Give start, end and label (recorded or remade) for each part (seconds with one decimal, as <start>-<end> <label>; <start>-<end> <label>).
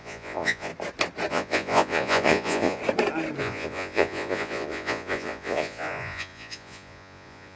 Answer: 0.0-0.7 remade; 0.7-1.3 recorded; 1.3-2.8 remade; 2.8-3.4 recorded; 3.4-7.6 remade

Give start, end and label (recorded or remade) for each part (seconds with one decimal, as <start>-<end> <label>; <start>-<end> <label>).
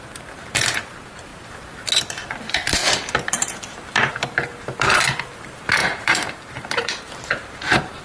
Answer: 0.0-8.0 remade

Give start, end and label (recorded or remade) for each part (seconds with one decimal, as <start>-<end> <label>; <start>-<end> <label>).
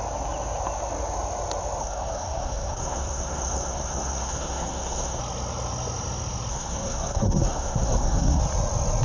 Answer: 0.0-1.8 recorded; 1.8-5.2 remade; 5.2-6.5 recorded; 6.5-8.4 remade; 8.4-9.0 recorded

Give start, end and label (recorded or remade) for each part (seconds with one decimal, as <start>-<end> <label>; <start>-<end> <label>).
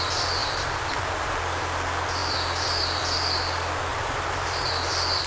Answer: 0.0-0.4 recorded; 0.4-1.4 remade; 1.4-3.9 recorded; 3.9-4.7 remade; 4.7-5.3 recorded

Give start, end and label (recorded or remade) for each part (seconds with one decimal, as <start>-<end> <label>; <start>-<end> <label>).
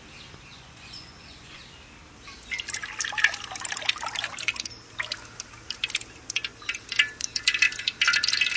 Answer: 0.0-0.5 recorded; 0.5-1.6 remade; 1.6-8.6 recorded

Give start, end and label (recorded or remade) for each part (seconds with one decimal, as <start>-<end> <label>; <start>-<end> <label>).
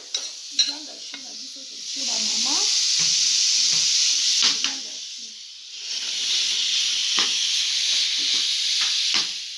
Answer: 0.0-7.0 recorded; 7.0-7.5 remade; 7.5-9.6 recorded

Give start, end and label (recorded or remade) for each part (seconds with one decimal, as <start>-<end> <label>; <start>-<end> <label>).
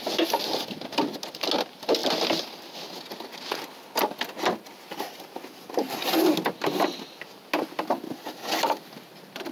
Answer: 0.0-9.5 recorded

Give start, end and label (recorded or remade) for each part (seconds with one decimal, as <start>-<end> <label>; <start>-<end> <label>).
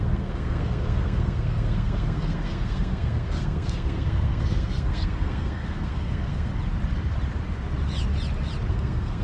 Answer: 0.0-6.5 remade; 6.5-8.7 recorded; 8.7-9.2 remade